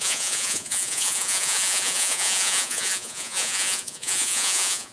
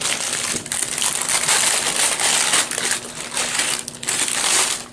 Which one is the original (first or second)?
second